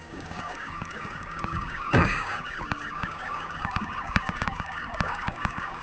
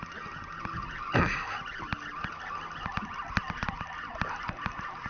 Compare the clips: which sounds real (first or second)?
second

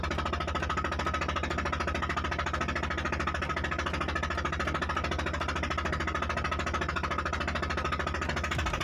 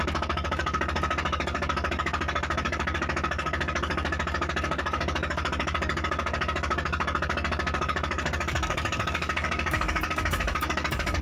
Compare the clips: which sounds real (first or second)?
first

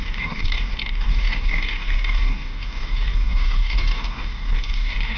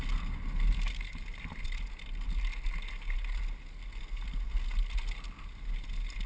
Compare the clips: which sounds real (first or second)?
second